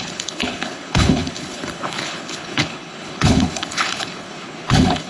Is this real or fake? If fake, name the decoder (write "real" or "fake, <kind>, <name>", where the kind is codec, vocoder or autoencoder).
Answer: fake, codec, HILCodec